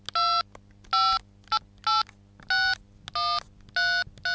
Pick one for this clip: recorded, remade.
recorded